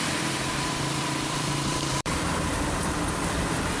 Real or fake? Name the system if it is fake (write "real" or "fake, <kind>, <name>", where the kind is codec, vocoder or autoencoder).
fake, vocoder, BigVGAN v2